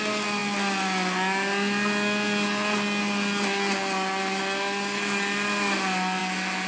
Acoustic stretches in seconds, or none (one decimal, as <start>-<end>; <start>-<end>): 0.0-6.7